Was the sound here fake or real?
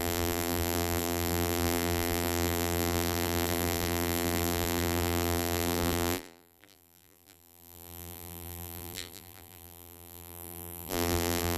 fake